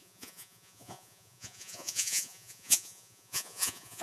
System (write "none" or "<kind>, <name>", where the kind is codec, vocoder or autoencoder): vocoder, Vocos